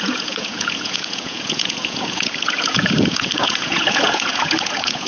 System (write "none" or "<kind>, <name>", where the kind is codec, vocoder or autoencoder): vocoder, Vocos